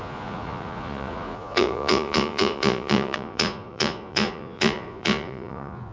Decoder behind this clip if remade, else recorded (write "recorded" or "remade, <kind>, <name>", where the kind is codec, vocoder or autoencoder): remade, vocoder, Vocos